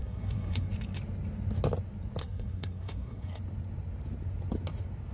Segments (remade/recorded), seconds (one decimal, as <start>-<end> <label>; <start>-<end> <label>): 0.0-0.7 remade; 0.7-2.2 recorded; 2.2-3.4 remade; 3.4-5.1 recorded